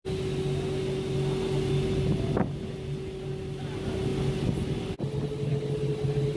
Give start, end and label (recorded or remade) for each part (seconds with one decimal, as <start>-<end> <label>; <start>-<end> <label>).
0.0-6.4 recorded